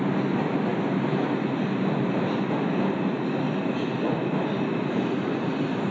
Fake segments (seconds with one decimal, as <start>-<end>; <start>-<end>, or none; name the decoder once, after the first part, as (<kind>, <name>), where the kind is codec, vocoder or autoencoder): none